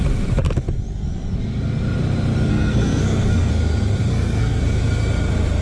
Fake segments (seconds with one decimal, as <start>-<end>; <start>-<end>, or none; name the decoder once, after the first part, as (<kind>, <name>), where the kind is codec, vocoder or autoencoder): 2.5-3.5 (codec, SNAC); 4.1-4.6